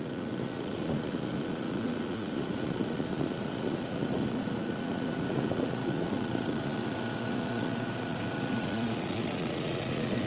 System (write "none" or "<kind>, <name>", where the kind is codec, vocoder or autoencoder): vocoder, Vocos